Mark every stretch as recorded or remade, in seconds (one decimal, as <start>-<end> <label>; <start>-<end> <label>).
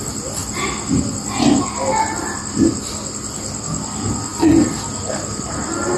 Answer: 0.0-6.0 recorded